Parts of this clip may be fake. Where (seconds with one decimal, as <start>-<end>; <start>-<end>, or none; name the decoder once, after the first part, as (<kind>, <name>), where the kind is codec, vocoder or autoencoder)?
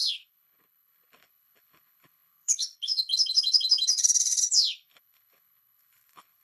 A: 0.0-6.4 (codec, HILCodec)